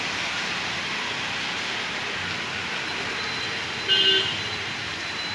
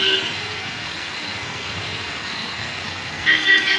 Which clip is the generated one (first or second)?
second